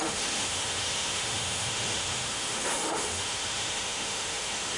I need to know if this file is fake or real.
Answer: fake